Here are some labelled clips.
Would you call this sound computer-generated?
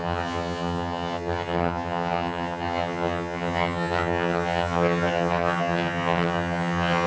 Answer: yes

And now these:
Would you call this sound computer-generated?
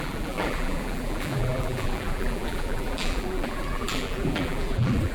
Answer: yes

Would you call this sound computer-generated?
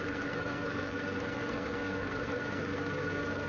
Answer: yes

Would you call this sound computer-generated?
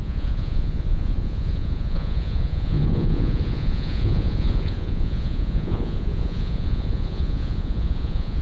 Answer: yes